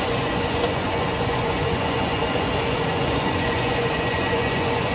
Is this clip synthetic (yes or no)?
yes